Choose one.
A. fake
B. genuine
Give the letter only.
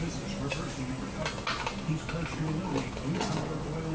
B